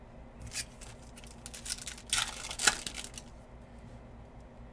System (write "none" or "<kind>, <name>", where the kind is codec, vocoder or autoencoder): none